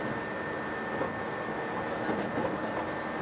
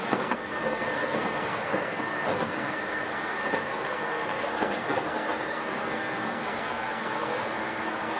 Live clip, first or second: first